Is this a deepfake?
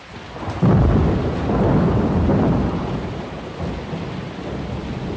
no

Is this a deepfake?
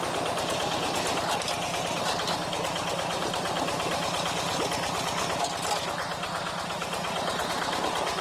no